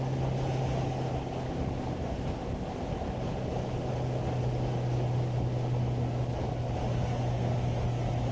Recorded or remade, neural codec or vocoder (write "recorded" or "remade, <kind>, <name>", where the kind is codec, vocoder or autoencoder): recorded